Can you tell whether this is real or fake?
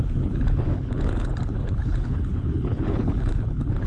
fake